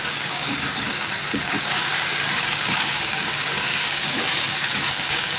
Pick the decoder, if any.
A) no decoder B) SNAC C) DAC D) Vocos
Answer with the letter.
C